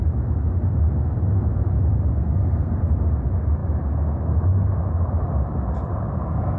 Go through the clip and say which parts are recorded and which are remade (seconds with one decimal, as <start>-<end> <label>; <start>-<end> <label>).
0.0-2.1 recorded; 2.1-2.8 remade; 2.8-6.6 recorded